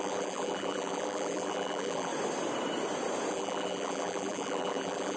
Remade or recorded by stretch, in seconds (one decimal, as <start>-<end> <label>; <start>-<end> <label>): 0.0-2.1 remade; 2.1-3.3 recorded; 3.3-5.2 remade